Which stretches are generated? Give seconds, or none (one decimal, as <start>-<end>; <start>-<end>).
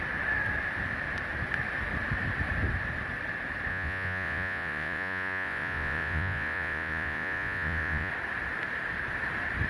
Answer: 3.7-8.1